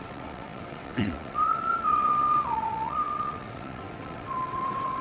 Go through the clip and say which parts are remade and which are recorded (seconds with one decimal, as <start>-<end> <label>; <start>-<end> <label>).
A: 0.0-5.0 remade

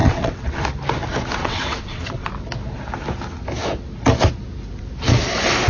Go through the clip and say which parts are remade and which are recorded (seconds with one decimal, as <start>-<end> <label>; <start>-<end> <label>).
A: 0.0-0.6 remade; 0.6-1.4 recorded; 1.4-2.3 remade; 2.3-5.7 recorded

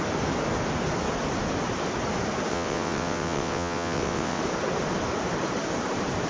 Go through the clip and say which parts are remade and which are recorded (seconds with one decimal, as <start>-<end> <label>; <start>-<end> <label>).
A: 0.0-2.5 recorded; 2.5-4.4 remade; 4.4-6.3 recorded